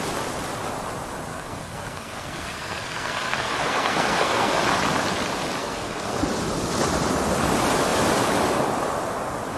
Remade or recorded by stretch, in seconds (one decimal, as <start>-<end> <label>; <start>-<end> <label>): 0.0-1.3 recorded; 1.3-4.6 remade; 4.6-5.6 recorded; 5.6-6.2 remade; 6.2-9.6 recorded